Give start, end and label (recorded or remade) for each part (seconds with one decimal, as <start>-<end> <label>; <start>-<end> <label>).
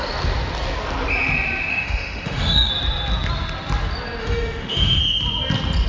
0.0-1.7 recorded; 1.7-2.7 remade; 2.7-4.2 recorded; 4.2-5.0 remade; 5.0-5.9 recorded